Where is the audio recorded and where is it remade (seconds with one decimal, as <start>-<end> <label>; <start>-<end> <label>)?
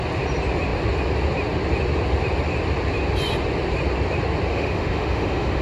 0.0-4.5 recorded; 4.5-5.6 remade